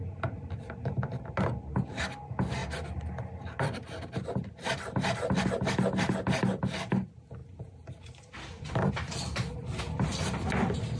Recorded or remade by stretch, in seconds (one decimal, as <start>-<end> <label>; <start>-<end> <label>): 0.0-11.0 recorded